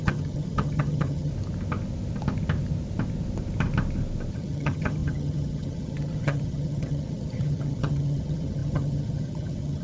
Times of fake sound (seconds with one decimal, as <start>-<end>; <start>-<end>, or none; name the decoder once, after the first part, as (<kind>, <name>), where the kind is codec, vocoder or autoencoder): 0.0-1.3 (vocoder, HiFi-GAN); 4.3-9.8